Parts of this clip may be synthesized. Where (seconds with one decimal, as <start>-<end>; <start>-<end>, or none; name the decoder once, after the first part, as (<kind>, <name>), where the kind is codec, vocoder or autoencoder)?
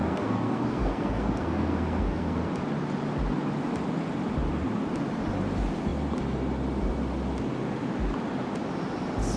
0.0-2.5 (codec, SNAC)